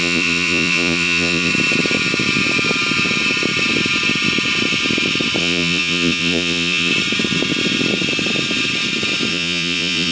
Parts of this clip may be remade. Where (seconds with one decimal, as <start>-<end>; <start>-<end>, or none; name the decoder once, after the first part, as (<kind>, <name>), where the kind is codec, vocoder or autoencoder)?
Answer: 0.0-1.5 (vocoder, Vocos); 5.4-6.9; 9.3-10.1

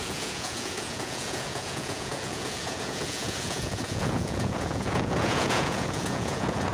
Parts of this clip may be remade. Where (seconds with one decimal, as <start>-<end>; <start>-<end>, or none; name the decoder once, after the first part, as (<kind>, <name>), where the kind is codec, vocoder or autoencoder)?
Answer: 0.0-6.7 (vocoder, Vocos)